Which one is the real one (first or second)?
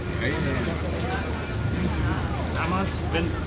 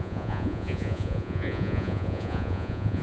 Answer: first